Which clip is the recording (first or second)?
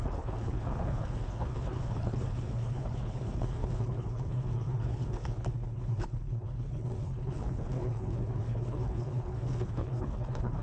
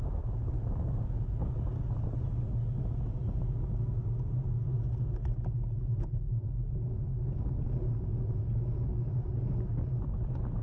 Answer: second